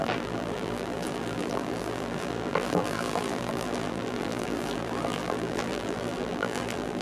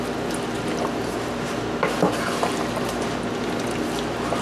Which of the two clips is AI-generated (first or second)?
first